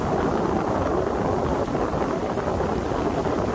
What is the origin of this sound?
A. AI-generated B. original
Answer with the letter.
B